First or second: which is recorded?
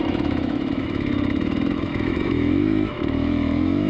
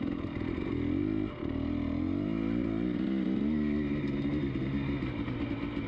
second